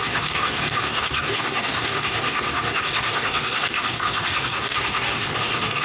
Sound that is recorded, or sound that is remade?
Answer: remade